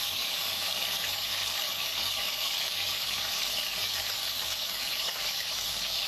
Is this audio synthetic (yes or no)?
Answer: yes